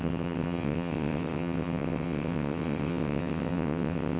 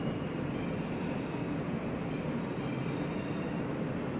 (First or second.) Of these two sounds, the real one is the second